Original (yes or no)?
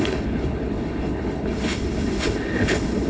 no